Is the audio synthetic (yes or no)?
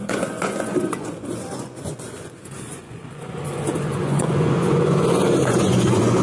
yes